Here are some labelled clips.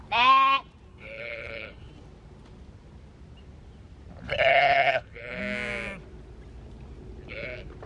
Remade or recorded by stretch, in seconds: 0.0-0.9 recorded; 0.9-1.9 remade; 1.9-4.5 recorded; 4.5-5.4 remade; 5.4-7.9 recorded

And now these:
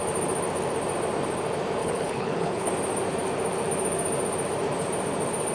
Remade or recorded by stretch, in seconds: 0.0-1.8 recorded; 1.8-2.7 remade; 2.7-5.5 recorded

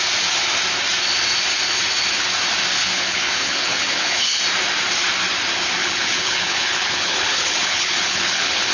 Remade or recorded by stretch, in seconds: 0.0-2.8 recorded; 2.8-4.4 remade; 4.4-5.8 recorded; 5.8-8.7 remade

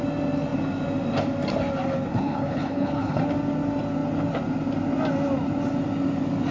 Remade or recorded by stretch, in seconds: 0.0-2.1 recorded; 2.1-3.2 remade; 3.2-6.5 recorded

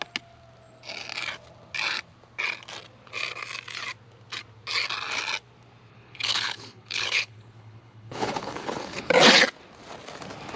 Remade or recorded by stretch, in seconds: 0.0-5.9 recorded; 5.9-9.1 remade; 9.1-10.6 recorded

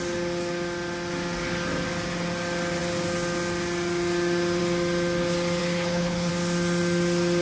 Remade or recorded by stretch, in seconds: 0.0-5.6 recorded; 5.6-6.3 remade; 6.3-7.4 recorded